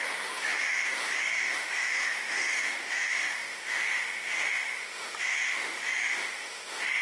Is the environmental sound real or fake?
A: fake